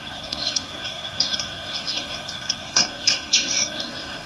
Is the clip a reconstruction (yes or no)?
yes